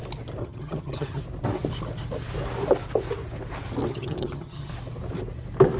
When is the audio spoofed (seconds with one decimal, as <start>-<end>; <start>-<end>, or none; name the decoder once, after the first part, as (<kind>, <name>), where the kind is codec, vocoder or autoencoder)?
0.4-1.2 (vocoder, HiFi-GAN); 3.9-4.7